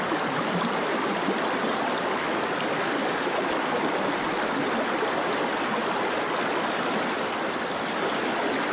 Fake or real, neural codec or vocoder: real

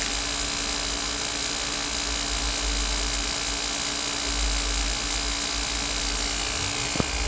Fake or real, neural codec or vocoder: real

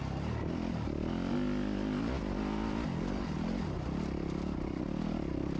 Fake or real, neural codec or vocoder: real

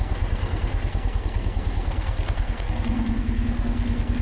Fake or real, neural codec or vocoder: fake, codec, SNAC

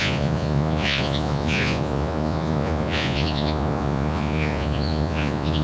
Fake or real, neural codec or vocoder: fake, vocoder, Vocos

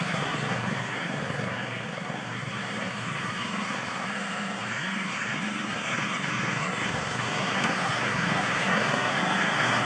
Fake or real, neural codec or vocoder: fake, codec, SNAC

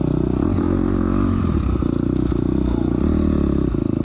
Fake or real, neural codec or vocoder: fake, vocoder, BigVGAN v2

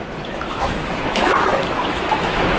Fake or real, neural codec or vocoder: fake, autoencoder, DAC-VAE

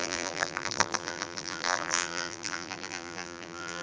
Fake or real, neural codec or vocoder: fake, vocoder, BigVGAN v2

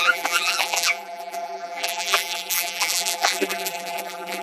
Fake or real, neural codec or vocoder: fake, vocoder, BigVGAN v2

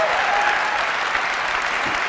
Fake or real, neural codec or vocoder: real